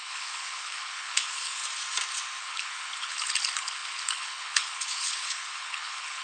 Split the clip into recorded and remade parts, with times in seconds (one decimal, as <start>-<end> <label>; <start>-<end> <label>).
0.0-1.6 remade; 1.6-2.4 recorded; 2.4-6.2 remade